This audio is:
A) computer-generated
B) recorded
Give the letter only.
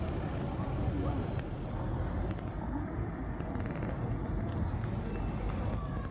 B